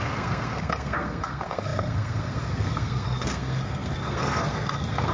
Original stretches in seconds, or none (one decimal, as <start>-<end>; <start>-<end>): none